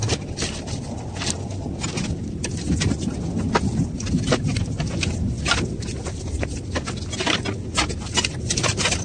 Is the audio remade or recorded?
recorded